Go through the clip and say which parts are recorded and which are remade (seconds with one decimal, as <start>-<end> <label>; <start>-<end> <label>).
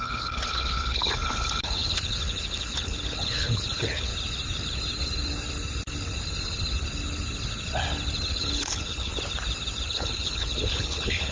0.0-4.1 remade; 4.1-8.3 recorded; 8.3-9.1 remade; 9.1-9.9 recorded; 9.9-11.3 remade